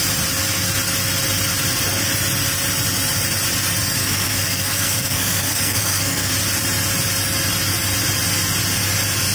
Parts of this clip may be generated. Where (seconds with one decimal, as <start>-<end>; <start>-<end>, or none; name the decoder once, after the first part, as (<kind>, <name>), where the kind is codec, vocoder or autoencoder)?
4.0-6.3 (codec, SNAC)